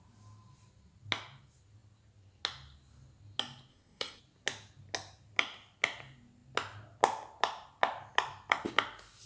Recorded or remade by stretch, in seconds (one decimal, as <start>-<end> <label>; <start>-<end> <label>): 0.0-3.7 recorded; 3.7-4.2 remade; 4.2-9.3 recorded